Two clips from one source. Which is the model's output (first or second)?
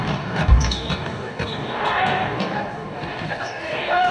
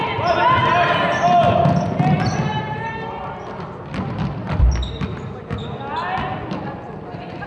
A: first